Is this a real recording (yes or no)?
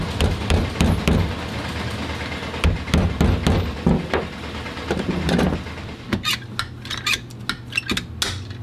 yes